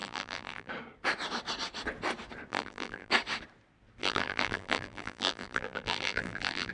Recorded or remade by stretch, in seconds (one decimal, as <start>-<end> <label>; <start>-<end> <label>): 0.0-0.7 remade; 0.7-2.5 recorded; 2.5-3.1 remade; 3.1-4.0 recorded; 4.0-6.7 remade

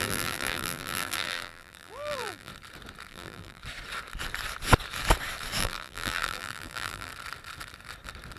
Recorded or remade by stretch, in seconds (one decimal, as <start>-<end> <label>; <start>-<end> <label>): 0.0-2.5 remade; 2.5-3.1 recorded; 3.1-3.6 remade; 3.6-5.6 recorded; 5.6-7.1 remade; 7.1-8.4 recorded

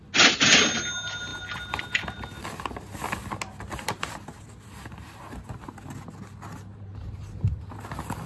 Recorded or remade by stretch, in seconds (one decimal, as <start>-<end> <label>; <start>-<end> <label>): 0.0-6.7 recorded; 6.7-7.5 remade; 7.5-8.3 recorded

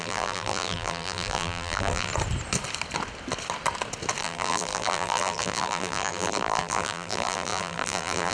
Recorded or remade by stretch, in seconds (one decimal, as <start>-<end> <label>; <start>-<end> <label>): 0.0-2.1 remade; 2.1-4.2 recorded; 4.2-8.3 remade

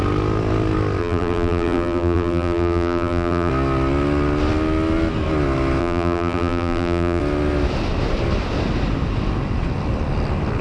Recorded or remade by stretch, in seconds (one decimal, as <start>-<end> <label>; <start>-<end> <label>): 0.0-1.0 recorded; 1.0-3.5 remade; 3.5-5.8 recorded; 5.8-7.2 remade; 7.2-10.6 recorded